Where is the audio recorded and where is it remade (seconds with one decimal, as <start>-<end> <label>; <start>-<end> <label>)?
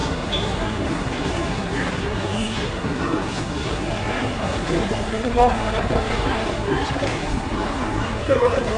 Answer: 0.0-8.8 remade